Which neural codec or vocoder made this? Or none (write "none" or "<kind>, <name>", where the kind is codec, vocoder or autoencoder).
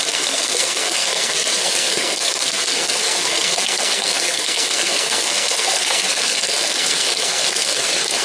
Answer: codec, SNAC